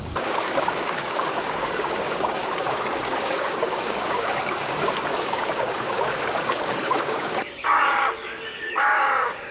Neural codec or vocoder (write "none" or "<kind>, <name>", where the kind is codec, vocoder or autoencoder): codec, DAC